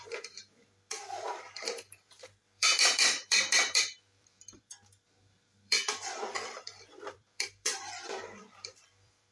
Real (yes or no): no